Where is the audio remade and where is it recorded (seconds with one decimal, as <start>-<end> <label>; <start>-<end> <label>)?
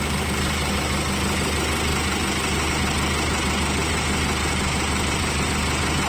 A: 0.0-4.4 recorded; 4.4-5.5 remade; 5.5-6.1 recorded